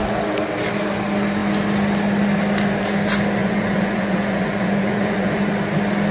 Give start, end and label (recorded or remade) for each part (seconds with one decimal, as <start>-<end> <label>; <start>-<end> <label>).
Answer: 0.0-3.4 recorded; 3.4-5.5 remade; 5.5-6.1 recorded